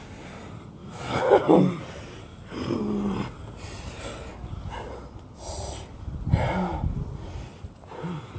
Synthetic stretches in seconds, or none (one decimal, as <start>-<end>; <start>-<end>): 0.8-1.3